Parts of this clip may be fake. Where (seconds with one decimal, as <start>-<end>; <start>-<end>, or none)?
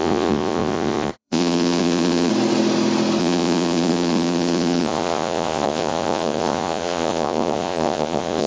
0.0-2.3; 3.2-8.5